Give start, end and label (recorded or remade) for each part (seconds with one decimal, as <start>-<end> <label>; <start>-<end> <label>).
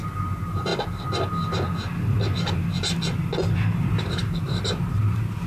0.0-0.7 remade; 0.7-4.0 recorded; 4.0-5.5 remade